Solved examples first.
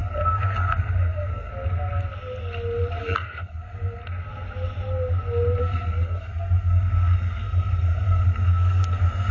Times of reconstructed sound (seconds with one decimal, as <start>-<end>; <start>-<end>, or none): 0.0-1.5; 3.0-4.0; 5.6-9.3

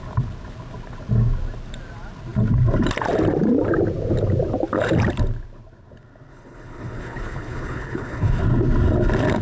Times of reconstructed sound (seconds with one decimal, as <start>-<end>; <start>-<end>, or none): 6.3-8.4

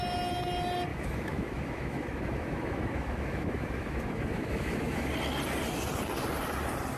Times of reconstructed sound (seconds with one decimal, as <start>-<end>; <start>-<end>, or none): 0.9-5.1

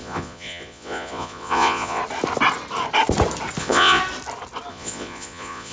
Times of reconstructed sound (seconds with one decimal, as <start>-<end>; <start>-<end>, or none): 0.0-2.0; 3.6-4.0; 4.7-5.7

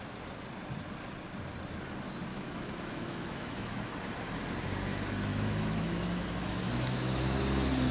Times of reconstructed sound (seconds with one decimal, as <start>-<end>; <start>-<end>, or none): 2.3-3.9; 5.3-7.4

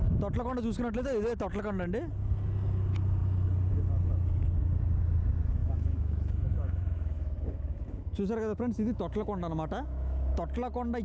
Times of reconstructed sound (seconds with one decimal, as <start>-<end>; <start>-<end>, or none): 5.6-10.3

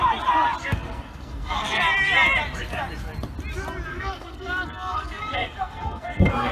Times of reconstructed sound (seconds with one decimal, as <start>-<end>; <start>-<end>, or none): 0.6-1.8; 3.9-6.5